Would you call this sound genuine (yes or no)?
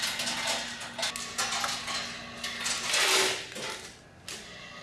yes